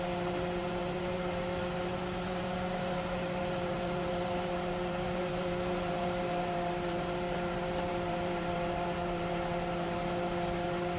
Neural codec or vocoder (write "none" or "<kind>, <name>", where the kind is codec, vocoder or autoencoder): vocoder, BigVGAN v2